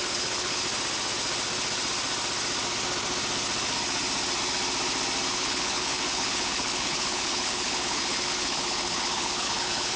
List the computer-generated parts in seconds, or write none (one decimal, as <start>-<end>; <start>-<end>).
0.0-0.6; 5.3-10.0